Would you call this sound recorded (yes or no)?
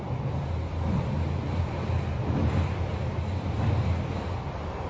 yes